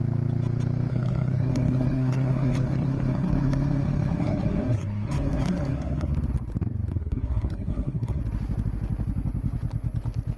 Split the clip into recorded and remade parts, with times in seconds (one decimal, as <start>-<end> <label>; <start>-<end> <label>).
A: 0.0-0.9 recorded; 0.9-6.1 remade; 6.1-6.9 recorded; 6.9-8.2 remade; 8.2-10.4 recorded